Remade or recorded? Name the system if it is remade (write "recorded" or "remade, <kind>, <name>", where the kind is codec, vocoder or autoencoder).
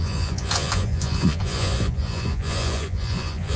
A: remade, vocoder, Vocos